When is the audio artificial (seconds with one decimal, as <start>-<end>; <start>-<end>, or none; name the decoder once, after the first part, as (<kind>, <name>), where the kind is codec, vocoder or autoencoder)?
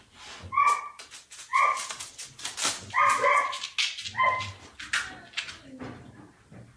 none